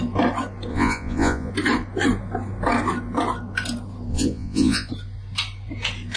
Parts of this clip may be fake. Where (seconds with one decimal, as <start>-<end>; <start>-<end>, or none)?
0.7-1.5; 4.1-4.9